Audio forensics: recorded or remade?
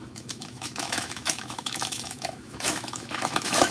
remade